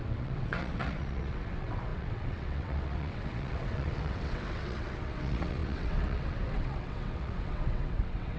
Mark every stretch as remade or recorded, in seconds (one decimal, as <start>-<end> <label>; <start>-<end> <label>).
0.0-8.4 remade